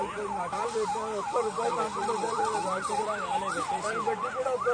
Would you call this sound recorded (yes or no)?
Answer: no